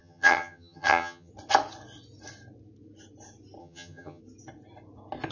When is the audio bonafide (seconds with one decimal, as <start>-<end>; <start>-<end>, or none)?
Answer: 1.3-3.6; 4.2-5.3